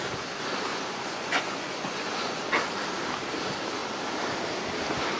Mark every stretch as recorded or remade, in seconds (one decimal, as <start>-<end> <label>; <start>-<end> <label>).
0.0-0.7 recorded; 0.7-2.4 remade; 2.4-5.2 recorded